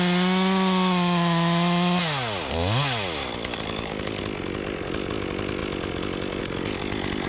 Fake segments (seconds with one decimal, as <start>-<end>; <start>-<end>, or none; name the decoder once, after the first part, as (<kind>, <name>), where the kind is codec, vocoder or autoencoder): 3.2-4.2 (codec, DAC)